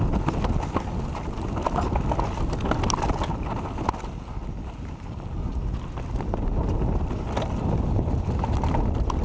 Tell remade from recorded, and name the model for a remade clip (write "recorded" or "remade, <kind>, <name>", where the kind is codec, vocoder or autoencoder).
recorded